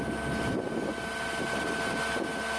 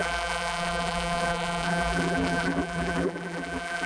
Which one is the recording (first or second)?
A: first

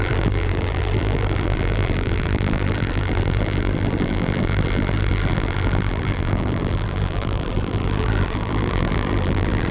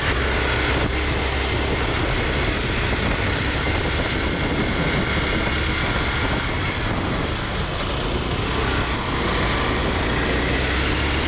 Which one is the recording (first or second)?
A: second